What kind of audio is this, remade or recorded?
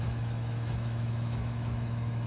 remade